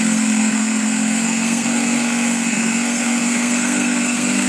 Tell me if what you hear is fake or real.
fake